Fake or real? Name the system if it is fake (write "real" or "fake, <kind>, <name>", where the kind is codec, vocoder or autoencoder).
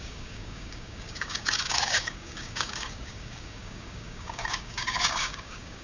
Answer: fake, codec, DAC